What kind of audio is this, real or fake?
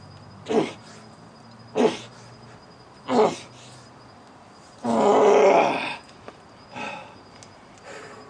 real